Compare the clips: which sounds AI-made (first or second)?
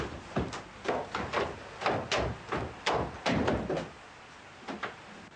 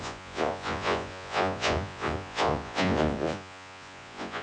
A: second